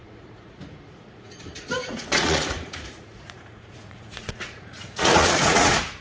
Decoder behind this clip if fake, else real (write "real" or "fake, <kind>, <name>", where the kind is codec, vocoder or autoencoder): fake, vocoder, Vocos